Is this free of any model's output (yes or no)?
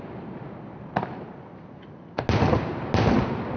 yes